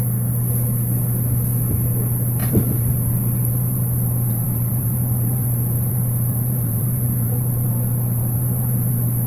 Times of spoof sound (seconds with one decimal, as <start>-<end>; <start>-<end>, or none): 2.4-2.9; 3.4-7.7; 8.2-8.9